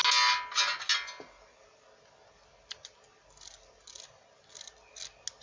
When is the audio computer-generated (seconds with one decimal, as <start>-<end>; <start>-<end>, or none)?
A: none